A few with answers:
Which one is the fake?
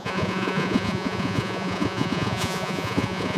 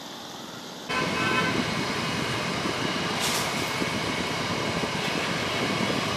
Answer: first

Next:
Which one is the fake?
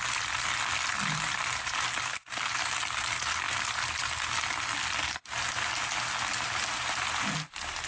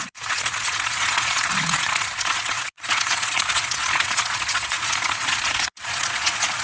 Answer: second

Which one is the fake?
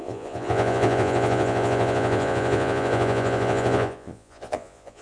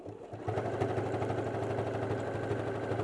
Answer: first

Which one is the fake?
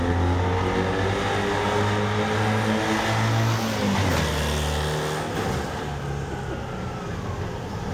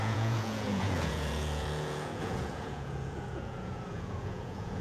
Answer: second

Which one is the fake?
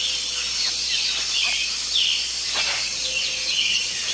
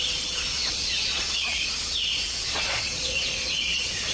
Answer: second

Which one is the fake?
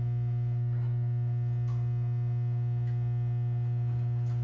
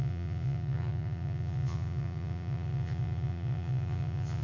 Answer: second